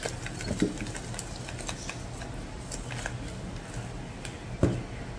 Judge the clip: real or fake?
real